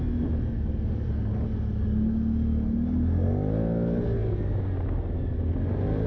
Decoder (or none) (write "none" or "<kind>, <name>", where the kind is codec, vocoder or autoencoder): none